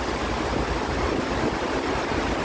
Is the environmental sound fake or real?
real